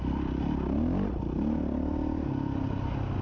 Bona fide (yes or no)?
yes